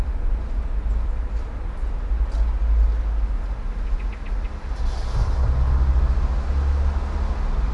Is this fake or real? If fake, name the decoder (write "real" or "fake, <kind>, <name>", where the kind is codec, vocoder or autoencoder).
real